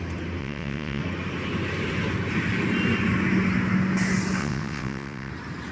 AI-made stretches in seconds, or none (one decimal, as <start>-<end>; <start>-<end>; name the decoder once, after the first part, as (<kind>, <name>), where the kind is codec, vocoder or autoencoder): 0.4-1.0 (vocoder, WaveNeXt); 4.4-5.3